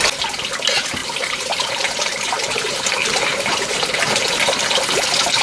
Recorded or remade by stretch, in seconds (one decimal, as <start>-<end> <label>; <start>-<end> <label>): 0.0-1.0 recorded; 1.0-4.2 remade; 4.2-5.4 recorded